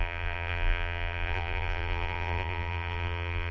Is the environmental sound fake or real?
fake